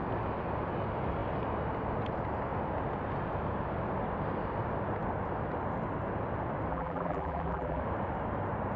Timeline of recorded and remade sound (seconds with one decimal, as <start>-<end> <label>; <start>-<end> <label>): 0.0-6.7 recorded; 6.7-7.8 remade; 7.8-8.8 recorded